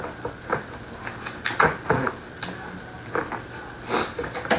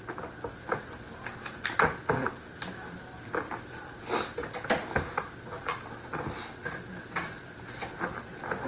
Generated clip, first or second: second